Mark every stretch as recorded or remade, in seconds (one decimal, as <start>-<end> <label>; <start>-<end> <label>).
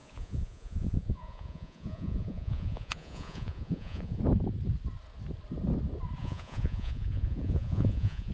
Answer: 0.0-4.2 remade; 4.2-6.2 recorded; 6.2-8.3 remade